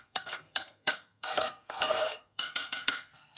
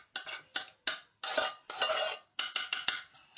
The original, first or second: second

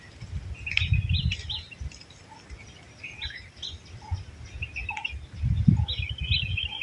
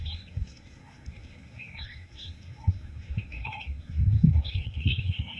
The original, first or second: first